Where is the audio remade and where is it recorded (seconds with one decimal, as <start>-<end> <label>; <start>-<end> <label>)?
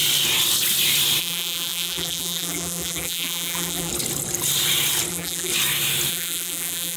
0.0-1.2 recorded; 1.2-3.9 remade; 3.9-5.1 recorded; 5.1-5.5 remade; 5.5-6.1 recorded; 6.1-7.0 remade